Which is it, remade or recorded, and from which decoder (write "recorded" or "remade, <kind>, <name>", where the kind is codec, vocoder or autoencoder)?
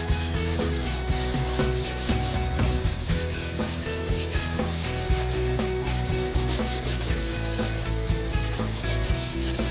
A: remade, codec, DAC